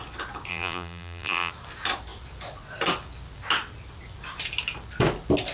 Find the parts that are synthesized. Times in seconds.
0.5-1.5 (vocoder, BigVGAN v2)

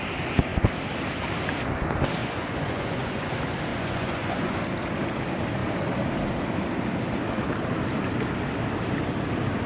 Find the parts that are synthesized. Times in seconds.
2.2-3.3 (vocoder, Vocos); 3.7-4.6

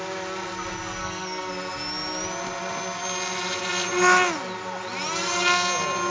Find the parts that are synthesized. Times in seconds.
1.0-1.5 (codec, SNAC)

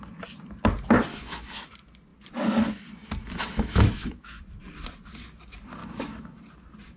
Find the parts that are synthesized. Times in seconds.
1.1-1.7 (autoencoder, DAC-VAE); 3.2-4.4; 5.8-6.4

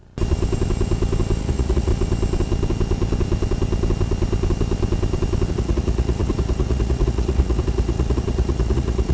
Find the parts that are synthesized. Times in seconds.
1.4-1.9 (vocoder, Vocos); 5.5-9.1

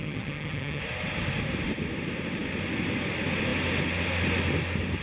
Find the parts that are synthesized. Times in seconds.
0.0-0.8 (vocoder, HiFi-GAN)